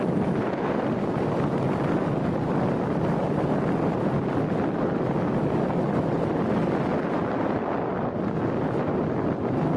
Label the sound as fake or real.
real